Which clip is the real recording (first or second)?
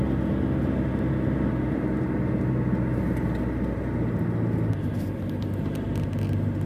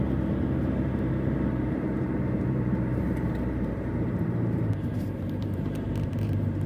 first